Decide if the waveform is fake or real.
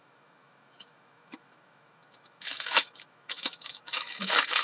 fake